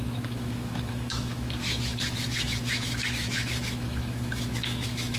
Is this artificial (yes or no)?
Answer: yes